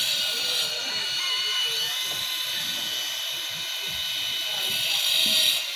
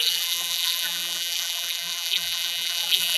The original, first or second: first